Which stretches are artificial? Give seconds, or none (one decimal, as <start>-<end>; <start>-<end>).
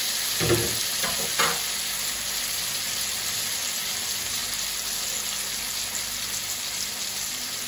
none